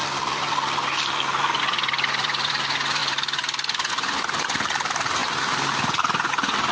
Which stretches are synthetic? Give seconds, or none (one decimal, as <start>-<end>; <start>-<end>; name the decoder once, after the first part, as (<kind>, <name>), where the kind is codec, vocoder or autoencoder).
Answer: 0.0-3.0 (vocoder, BigVGAN v2); 3.9-5.2; 6.3-6.7